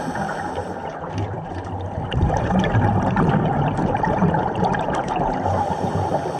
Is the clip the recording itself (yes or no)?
no